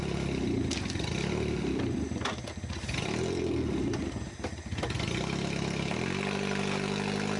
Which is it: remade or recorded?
remade